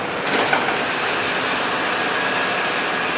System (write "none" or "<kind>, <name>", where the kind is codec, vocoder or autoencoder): none